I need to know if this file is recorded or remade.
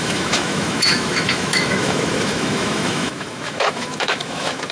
remade